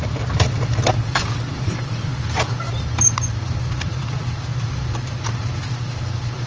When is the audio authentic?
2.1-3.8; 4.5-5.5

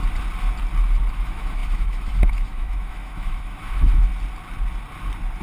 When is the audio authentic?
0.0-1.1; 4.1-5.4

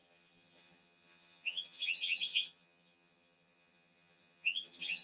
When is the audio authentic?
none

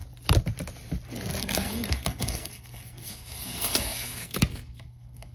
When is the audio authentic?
0.0-1.4